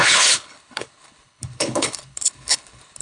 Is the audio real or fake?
fake